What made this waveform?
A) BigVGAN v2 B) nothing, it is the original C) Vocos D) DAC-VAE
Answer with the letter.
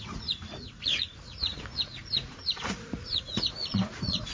C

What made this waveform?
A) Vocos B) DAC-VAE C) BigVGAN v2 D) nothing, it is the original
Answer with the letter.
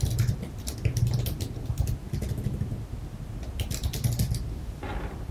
D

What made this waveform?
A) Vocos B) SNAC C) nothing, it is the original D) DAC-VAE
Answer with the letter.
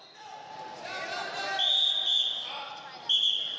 C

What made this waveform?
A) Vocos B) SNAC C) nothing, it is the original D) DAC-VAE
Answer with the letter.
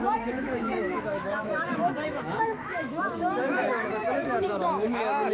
D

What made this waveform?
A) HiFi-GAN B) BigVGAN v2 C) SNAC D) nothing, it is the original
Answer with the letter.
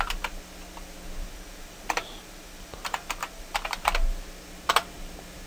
D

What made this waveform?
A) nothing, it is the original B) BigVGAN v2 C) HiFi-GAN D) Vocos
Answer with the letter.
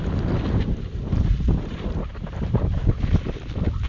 A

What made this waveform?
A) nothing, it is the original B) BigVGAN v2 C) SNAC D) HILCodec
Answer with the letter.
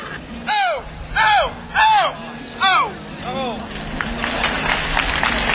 A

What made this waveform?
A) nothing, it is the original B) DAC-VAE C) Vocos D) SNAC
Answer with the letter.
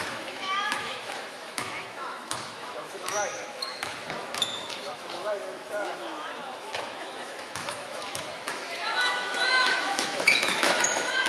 B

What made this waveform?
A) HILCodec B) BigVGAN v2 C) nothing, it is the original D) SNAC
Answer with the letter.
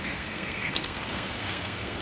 D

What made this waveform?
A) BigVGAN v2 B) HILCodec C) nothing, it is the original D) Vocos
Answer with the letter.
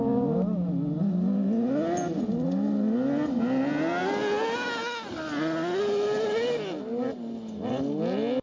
C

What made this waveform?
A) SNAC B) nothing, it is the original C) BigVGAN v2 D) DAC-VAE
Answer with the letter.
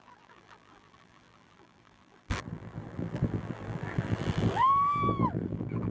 C